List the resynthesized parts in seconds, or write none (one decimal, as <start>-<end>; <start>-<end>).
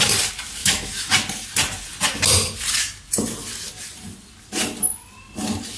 0.6-1.1